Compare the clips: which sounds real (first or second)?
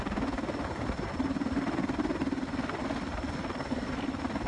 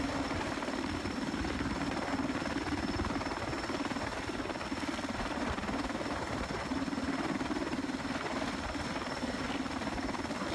first